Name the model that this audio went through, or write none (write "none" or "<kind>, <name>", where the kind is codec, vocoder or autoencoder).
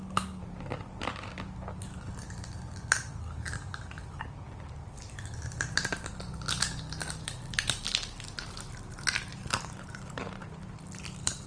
vocoder, BigVGAN v2